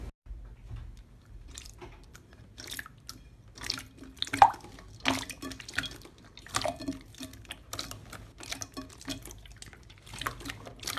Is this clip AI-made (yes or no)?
no